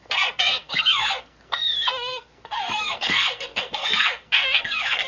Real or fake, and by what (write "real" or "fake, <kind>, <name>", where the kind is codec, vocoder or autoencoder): fake, codec, SNAC